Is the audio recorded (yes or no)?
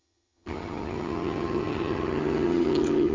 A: no